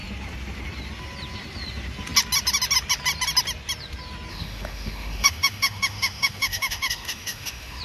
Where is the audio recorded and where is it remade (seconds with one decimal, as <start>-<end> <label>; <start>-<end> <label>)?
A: 0.0-4.3 recorded; 4.3-7.8 remade